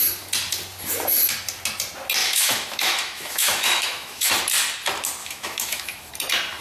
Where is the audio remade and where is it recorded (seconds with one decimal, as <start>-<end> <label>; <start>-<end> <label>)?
0.0-2.2 recorded; 2.2-4.3 remade; 4.3-5.2 recorded; 5.2-6.1 remade; 6.1-6.6 recorded